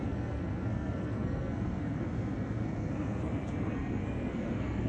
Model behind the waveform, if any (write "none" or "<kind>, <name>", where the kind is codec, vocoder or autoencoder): codec, SNAC